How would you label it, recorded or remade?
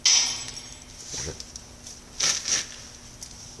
recorded